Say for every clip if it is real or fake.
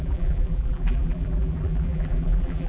fake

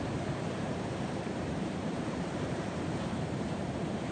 fake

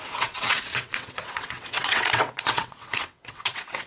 fake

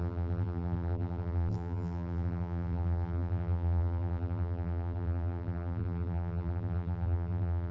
fake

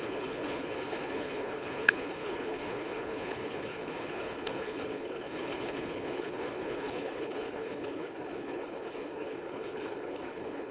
fake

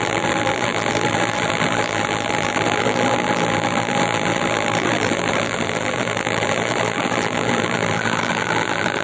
fake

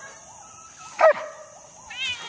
real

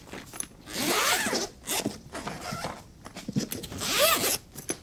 fake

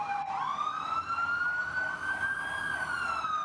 real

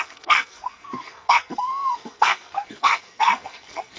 fake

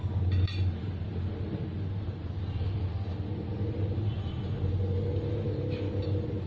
real